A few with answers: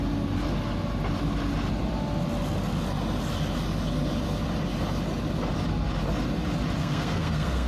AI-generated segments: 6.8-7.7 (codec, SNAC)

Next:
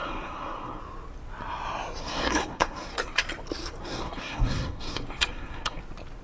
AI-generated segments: 0.0-0.8 (codec, SNAC); 2.0-3.2; 3.8-5.8

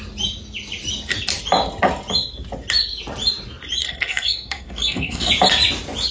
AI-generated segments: 3.8-5.3 (codec, SNAC)

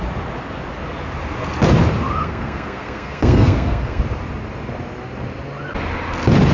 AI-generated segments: 2.2-4.0 (codec, SNAC)

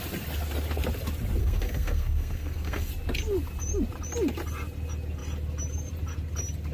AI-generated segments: 1.4-2.9 (codec, SNAC)

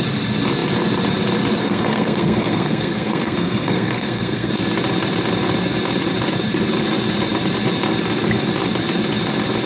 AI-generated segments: 1.6-4.5 (codec, SNAC)